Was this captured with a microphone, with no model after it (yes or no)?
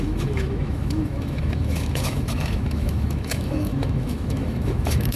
no